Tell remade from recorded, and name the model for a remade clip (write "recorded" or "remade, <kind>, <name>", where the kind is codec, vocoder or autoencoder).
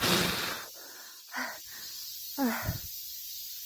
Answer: remade, vocoder, BigVGAN v2